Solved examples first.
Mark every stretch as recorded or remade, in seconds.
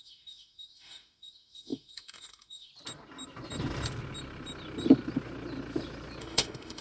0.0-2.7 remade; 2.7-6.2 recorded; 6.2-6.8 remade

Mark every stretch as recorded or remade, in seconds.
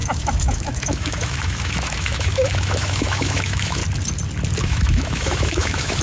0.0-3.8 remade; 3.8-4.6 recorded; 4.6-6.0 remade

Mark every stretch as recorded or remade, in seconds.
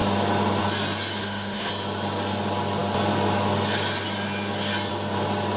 0.0-1.2 recorded; 1.2-1.7 remade; 1.7-5.6 recorded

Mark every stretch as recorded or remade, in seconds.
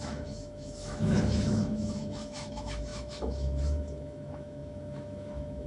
0.0-5.7 remade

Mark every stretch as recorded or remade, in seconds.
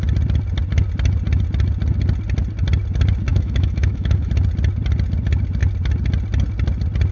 0.0-3.3 recorded; 3.3-4.3 remade; 4.3-7.1 recorded